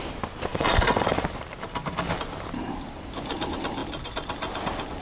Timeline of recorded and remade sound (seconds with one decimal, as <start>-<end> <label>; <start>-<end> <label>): 0.0-5.0 recorded